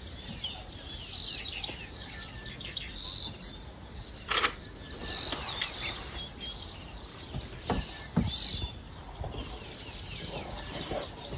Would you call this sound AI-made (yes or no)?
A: no